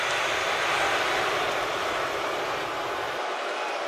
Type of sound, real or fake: real